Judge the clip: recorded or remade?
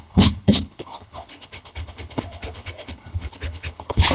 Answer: remade